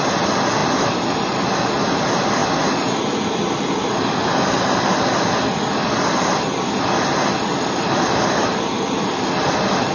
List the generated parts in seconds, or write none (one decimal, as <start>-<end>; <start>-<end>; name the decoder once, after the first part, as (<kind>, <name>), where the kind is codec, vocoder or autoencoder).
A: none